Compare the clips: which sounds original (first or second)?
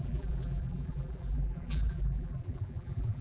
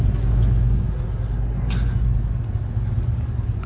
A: second